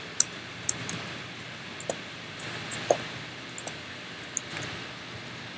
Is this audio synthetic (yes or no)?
no